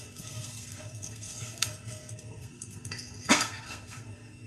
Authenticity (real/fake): fake